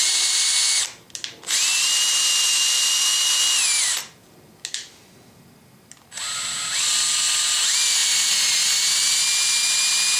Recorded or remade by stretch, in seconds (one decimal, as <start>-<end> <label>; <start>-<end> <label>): 0.0-10.2 recorded